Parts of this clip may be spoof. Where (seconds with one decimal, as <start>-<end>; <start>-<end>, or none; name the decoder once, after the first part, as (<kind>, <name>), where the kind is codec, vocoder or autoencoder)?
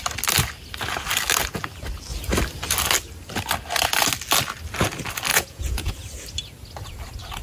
5.3-5.9 (vocoder, Vocos)